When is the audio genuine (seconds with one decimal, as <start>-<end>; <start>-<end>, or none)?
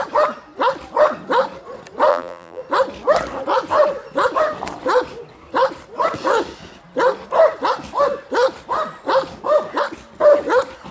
0.0-2.1; 2.6-10.9